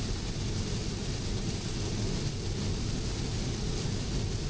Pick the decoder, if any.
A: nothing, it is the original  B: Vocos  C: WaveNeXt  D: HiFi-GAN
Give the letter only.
A